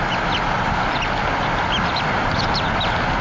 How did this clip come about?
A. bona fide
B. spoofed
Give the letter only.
A